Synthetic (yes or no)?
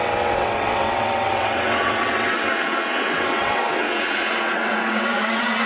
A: yes